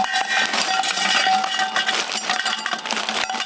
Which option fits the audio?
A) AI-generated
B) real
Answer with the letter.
B